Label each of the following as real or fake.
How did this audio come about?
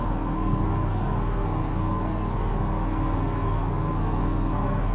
fake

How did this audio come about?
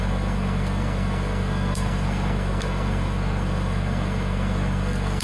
fake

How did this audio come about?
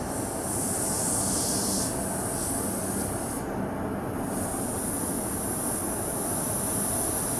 real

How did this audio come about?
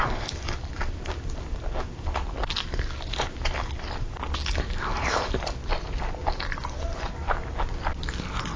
real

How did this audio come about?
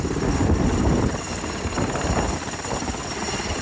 real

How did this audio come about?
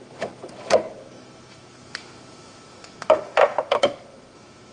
fake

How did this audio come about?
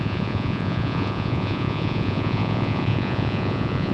fake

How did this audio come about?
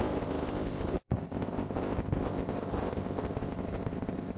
fake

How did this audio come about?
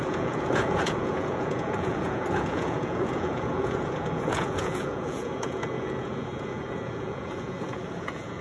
fake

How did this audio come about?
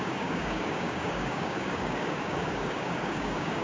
fake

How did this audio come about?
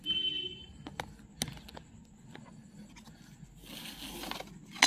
real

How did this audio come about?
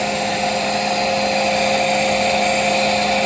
real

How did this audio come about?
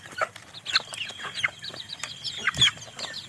real